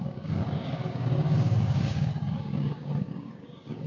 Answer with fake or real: fake